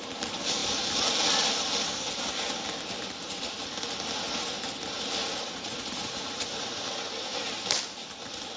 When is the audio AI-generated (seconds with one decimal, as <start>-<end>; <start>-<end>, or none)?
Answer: 5.2-6.8